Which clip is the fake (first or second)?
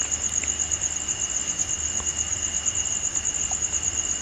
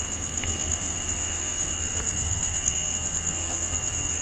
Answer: second